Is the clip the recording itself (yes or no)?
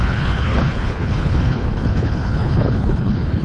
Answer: no